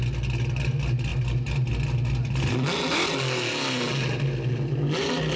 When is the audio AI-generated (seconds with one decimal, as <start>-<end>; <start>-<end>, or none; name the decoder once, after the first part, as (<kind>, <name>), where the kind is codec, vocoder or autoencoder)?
none